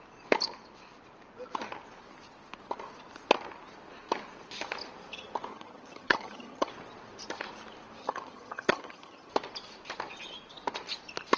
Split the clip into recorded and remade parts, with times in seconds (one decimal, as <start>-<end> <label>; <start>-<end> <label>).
0.0-5.5 recorded; 5.5-6.7 remade; 6.7-8.0 recorded; 8.0-9.3 remade; 9.3-11.4 recorded